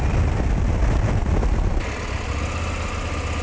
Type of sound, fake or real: real